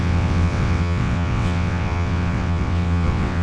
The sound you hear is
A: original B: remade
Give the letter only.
B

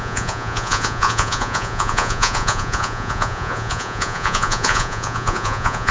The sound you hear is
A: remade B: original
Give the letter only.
A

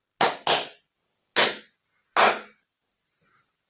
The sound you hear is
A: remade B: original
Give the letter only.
B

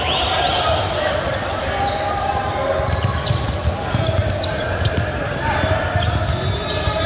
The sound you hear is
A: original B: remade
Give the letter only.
A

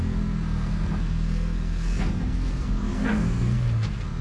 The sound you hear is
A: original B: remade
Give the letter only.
B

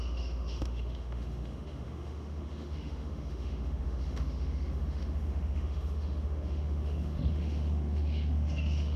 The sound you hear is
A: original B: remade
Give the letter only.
B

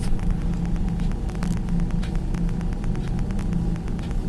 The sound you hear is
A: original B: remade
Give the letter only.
A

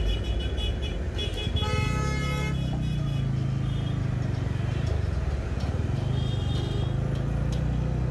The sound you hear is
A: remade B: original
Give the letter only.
B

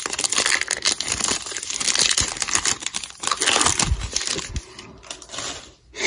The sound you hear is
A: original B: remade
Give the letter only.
A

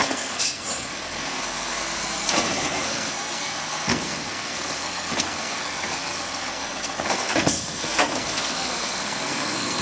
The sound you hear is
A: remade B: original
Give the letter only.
A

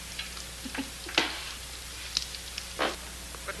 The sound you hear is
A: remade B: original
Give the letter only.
B